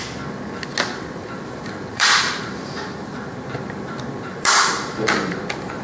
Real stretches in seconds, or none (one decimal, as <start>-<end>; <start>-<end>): 0.0-1.2; 4.7-5.8